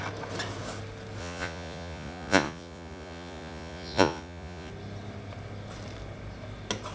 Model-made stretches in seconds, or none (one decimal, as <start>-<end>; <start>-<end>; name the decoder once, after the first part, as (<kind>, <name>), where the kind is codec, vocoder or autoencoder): 1.2-4.7 (vocoder, Vocos)